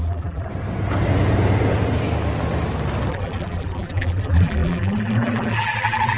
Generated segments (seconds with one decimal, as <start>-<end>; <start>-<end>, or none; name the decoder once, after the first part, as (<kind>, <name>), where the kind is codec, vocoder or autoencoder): 0.0-0.5 (vocoder, BigVGAN v2); 3.1-6.2